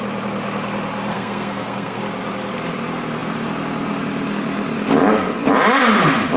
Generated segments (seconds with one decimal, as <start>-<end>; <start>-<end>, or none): 1.1-2.0

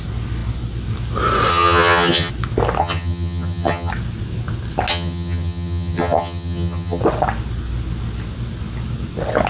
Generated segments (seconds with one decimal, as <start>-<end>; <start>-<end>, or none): 1.5-2.3; 2.8-3.9; 4.9-7.0

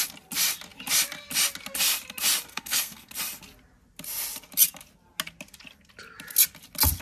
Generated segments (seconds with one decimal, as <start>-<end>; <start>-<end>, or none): 2.5-3.1

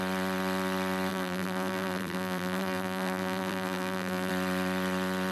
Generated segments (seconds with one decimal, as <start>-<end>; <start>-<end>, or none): 1.1-4.3

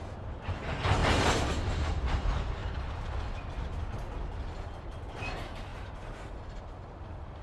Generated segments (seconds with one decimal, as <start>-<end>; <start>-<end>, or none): 0.0-2.6; 5.1-7.4

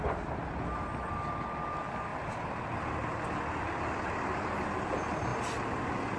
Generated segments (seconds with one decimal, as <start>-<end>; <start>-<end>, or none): none